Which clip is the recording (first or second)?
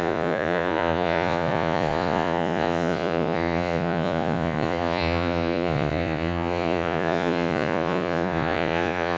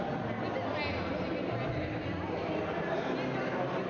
second